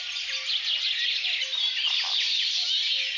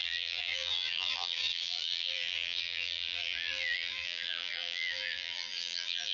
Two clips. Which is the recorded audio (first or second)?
first